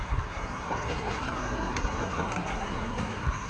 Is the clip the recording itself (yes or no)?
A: no